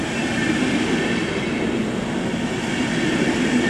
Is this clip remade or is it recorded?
recorded